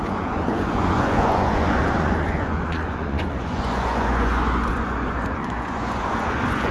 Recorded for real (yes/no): no